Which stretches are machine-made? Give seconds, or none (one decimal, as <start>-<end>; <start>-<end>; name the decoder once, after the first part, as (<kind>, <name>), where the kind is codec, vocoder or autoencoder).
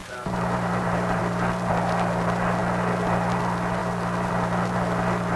0.0-1.2 (vocoder, BigVGAN v2)